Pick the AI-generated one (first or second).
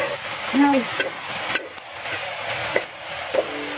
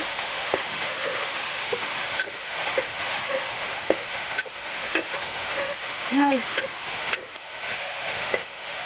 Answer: second